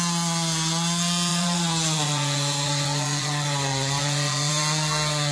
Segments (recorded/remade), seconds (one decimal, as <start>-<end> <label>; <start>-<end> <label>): 0.0-1.3 recorded; 1.3-4.5 remade; 4.5-5.3 recorded

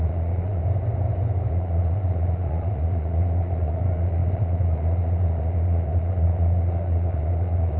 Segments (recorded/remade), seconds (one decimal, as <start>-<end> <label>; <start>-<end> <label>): 0.0-0.6 remade; 0.6-1.5 recorded; 1.5-7.8 remade

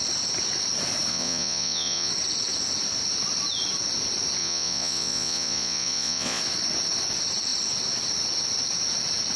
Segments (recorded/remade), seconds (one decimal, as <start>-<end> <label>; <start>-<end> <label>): 0.0-1.1 recorded; 1.1-2.1 remade; 2.1-4.4 recorded; 4.4-6.4 remade; 6.4-9.4 recorded

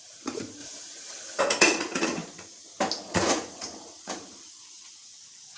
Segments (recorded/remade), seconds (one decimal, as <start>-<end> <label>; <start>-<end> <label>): 0.0-0.6 remade; 0.6-1.4 recorded; 1.4-2.2 remade; 2.2-3.1 recorded; 3.1-5.6 remade